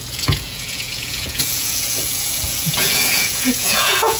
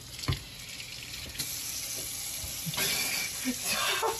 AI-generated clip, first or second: first